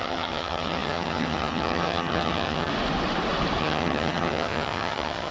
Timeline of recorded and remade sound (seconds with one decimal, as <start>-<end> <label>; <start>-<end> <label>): 0.0-2.7 remade; 2.7-3.6 recorded; 3.6-5.3 remade